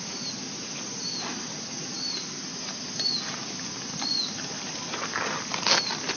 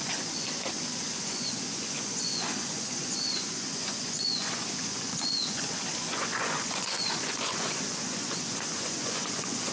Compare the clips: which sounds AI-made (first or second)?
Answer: second